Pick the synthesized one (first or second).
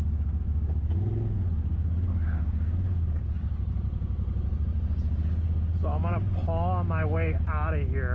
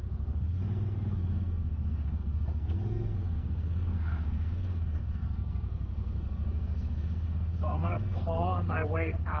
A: second